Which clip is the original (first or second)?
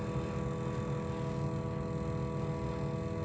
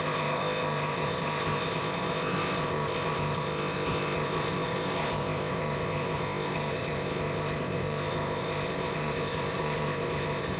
first